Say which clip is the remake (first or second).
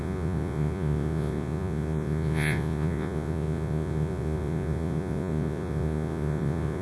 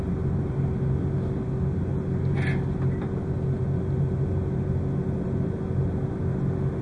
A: first